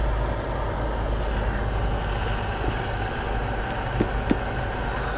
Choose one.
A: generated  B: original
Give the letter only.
B